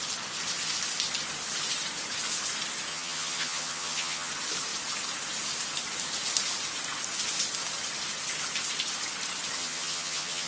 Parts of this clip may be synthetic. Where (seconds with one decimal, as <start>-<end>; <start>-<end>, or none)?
2.9-4.3; 9.6-10.5